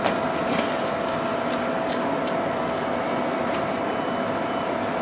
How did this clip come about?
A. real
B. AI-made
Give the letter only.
A